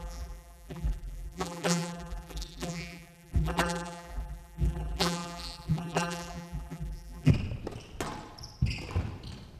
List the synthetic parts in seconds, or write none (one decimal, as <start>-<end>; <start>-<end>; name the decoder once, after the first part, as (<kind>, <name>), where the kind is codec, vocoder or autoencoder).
0.0-7.3 (vocoder, BigVGAN v2)